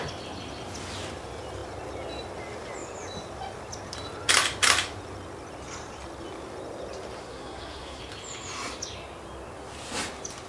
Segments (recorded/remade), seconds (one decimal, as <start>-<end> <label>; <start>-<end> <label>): 0.0-7.2 recorded; 7.2-8.0 remade; 8.0-10.5 recorded